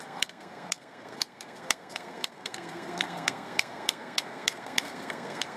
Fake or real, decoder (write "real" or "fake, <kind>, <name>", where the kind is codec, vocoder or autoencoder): fake, codec, SNAC